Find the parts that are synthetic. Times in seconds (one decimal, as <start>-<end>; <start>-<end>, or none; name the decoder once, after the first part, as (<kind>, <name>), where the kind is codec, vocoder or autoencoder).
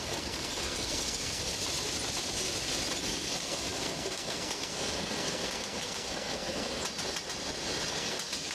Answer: 0.0-1.5 (codec, SNAC); 3.0-6.8; 7.9-8.5